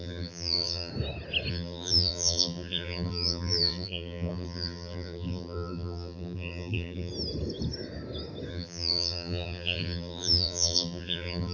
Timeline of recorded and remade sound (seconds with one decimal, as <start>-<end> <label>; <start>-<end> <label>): 0.0-0.9 remade; 0.9-1.5 recorded; 1.5-7.1 remade; 7.1-8.5 recorded; 8.5-11.5 remade